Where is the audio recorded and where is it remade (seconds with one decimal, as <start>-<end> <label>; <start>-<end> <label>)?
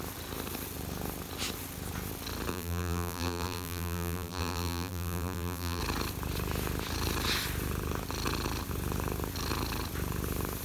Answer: 0.0-2.5 recorded; 2.5-5.8 remade; 5.8-10.6 recorded